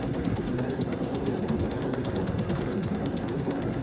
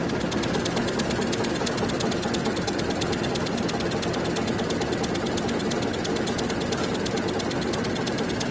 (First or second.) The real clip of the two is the second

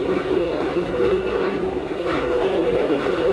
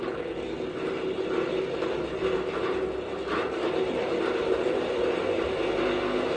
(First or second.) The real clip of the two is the second